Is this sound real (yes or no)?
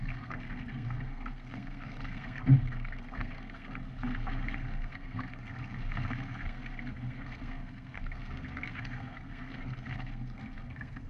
no